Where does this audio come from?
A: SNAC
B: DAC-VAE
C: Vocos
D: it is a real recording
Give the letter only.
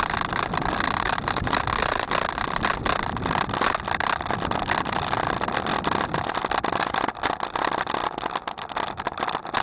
D